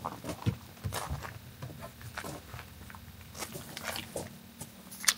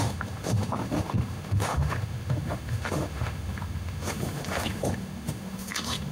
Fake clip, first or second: second